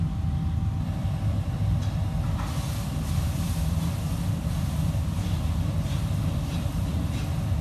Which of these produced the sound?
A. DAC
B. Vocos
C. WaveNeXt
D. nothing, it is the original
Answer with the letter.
D